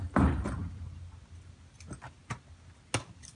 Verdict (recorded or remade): recorded